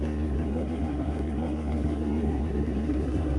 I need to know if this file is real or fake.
fake